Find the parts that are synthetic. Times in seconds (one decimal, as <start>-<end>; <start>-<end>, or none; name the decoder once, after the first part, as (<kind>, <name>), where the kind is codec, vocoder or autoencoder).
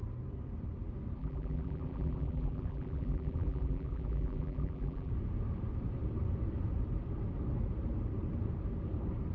1.2-5.1 (vocoder, BigVGAN v2)